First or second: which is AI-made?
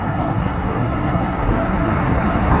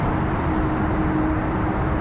first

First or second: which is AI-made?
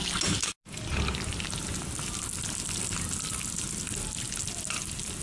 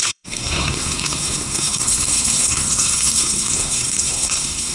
second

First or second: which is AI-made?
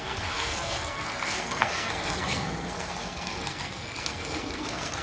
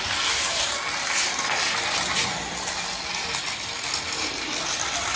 first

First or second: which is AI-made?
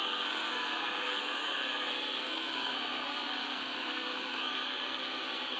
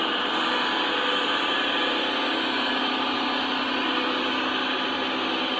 first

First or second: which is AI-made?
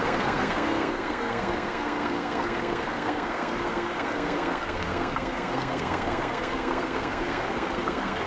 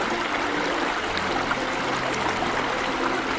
first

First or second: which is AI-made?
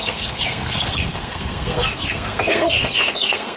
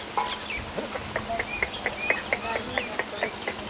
first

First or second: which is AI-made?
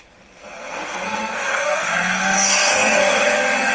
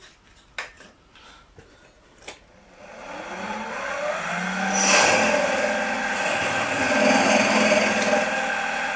first